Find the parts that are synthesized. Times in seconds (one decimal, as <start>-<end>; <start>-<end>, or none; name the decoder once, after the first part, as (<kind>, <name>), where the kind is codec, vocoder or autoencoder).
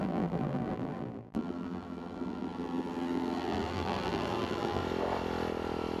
0.0-4.8 (vocoder, BigVGAN v2)